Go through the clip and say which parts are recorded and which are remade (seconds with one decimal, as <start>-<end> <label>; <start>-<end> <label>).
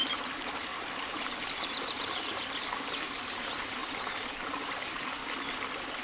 0.0-5.2 remade; 5.2-6.0 recorded